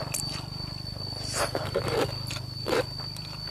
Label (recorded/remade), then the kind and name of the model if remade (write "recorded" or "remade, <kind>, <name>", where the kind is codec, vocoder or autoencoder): recorded